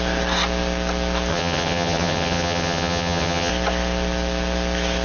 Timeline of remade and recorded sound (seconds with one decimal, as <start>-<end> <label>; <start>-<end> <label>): 0.0-1.3 recorded; 1.3-3.5 remade; 3.5-5.0 recorded